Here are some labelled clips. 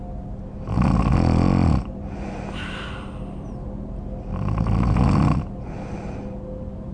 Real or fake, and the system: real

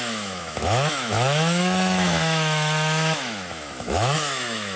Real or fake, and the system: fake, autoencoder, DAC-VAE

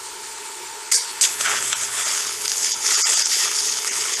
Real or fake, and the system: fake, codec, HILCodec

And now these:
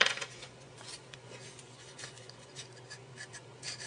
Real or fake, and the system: fake, vocoder, Vocos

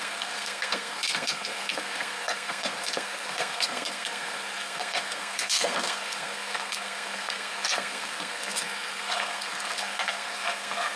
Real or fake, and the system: fake, codec, SNAC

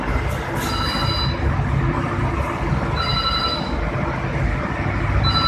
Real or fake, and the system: real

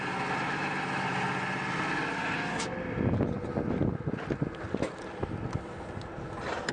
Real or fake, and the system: real